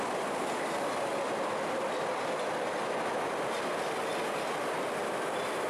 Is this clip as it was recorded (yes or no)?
yes